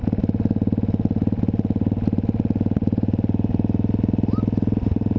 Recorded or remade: recorded